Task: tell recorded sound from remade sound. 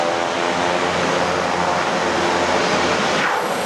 recorded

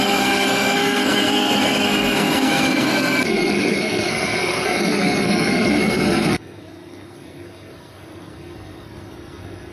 remade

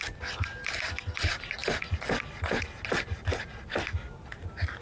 recorded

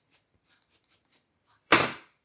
remade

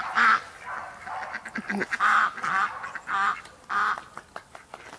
recorded